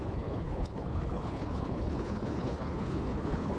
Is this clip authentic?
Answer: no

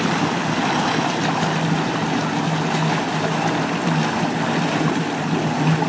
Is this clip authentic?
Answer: yes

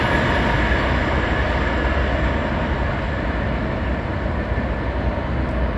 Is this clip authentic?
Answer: yes